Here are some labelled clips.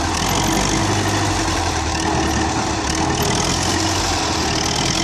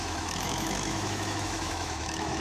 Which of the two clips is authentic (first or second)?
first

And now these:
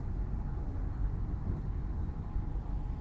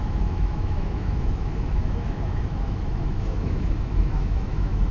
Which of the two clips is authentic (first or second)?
first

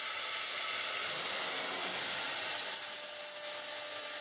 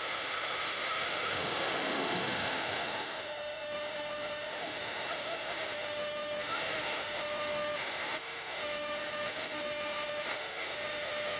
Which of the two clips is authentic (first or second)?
first